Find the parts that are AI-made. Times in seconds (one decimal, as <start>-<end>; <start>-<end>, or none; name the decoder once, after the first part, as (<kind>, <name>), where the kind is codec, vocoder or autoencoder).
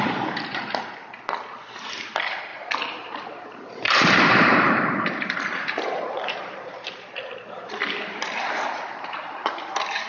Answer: 2.5-7.7 (vocoder, BigVGAN v2); 8.9-9.5